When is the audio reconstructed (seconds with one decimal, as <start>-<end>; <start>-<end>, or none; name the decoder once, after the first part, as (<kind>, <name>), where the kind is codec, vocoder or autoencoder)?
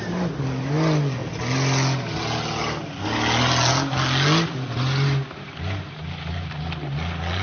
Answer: none